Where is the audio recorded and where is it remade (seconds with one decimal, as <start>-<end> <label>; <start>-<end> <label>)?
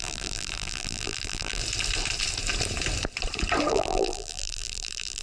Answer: 0.0-1.6 remade; 1.6-3.7 recorded; 3.7-5.2 remade